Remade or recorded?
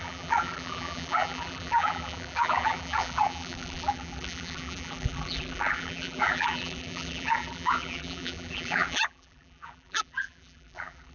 remade